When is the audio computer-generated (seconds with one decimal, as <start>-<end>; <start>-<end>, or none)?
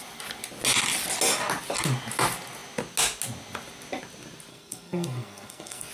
4.5-5.9